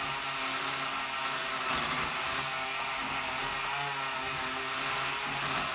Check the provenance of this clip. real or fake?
real